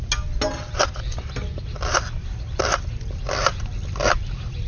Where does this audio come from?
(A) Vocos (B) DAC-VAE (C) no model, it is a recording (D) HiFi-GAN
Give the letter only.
C